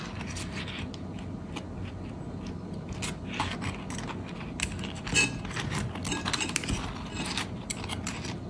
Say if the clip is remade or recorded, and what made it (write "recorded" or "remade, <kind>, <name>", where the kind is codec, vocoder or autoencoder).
recorded